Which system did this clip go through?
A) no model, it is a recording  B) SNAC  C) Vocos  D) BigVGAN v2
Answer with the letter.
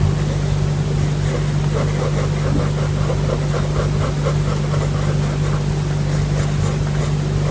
A